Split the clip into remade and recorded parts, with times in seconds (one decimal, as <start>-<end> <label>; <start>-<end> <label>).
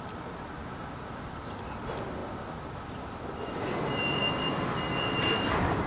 0.0-5.9 recorded